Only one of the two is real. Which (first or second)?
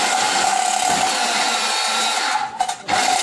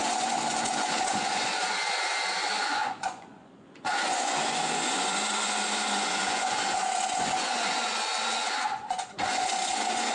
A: first